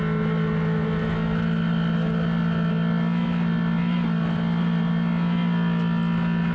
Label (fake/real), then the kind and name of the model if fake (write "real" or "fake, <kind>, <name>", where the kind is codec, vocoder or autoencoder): real